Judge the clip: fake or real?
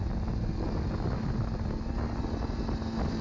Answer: real